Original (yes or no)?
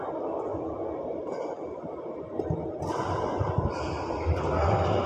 yes